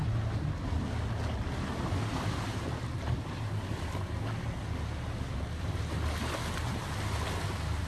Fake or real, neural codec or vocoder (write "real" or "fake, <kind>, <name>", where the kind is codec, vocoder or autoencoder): real